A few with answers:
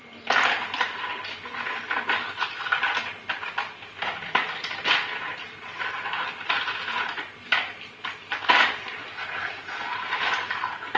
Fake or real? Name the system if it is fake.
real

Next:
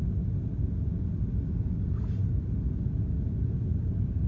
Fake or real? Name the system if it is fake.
real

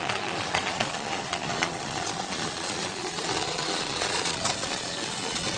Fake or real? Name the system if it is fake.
fake, vocoder, Vocos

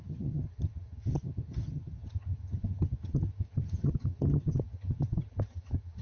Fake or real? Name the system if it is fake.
fake, vocoder, HiFi-GAN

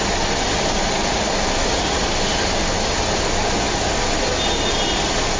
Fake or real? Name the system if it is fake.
real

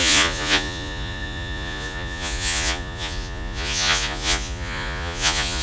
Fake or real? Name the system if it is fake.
fake, vocoder, Vocos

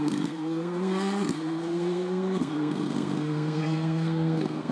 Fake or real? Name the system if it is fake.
fake, codec, SNAC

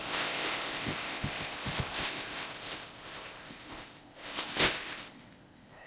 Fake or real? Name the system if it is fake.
fake, codec, ZipCodec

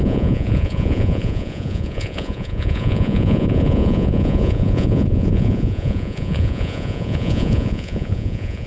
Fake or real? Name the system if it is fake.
fake, vocoder, Vocos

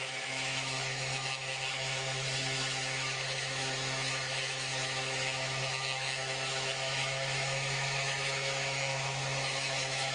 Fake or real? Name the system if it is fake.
fake, autoencoder, DAC-VAE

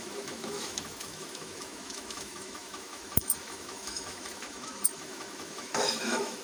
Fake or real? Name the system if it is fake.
fake, autoencoder, DAC-VAE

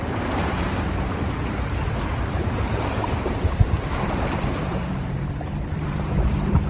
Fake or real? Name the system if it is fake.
fake, vocoder, BigVGAN v2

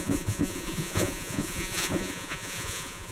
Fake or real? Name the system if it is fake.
fake, vocoder, Vocos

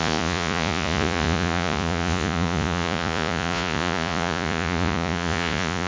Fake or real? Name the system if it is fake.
fake, vocoder, Vocos